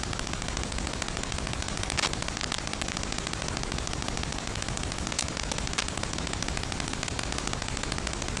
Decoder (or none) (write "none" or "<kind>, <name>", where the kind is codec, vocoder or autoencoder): codec, DAC